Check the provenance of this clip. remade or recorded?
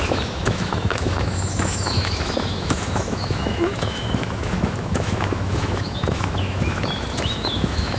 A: remade